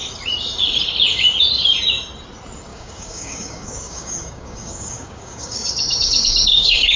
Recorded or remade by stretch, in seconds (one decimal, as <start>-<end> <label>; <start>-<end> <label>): 0.0-2.7 recorded; 2.7-7.0 remade